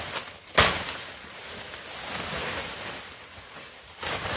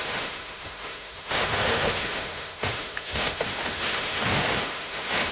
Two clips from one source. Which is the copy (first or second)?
second